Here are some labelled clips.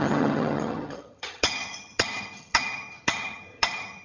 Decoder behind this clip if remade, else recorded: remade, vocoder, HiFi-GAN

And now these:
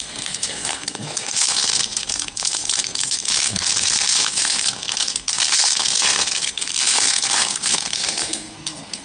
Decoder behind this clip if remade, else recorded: remade, codec, SNAC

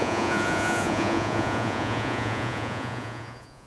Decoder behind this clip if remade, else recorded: remade, vocoder, Vocos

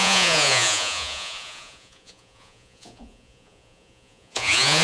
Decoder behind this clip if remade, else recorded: remade, vocoder, Vocos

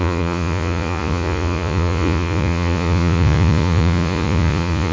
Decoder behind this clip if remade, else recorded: remade, vocoder, Vocos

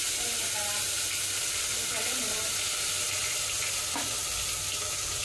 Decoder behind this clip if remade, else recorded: recorded